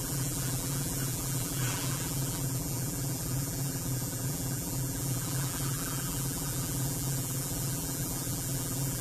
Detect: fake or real fake